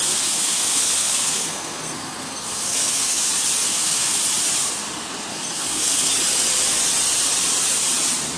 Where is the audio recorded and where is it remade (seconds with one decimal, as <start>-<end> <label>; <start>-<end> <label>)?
0.0-3.3 remade; 3.3-3.7 recorded; 3.7-4.2 remade; 4.2-5.3 recorded; 5.3-6.1 remade; 6.1-8.4 recorded